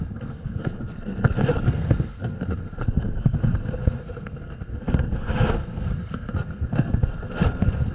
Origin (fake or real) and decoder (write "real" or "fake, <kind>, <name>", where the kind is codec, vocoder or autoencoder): fake, codec, SNAC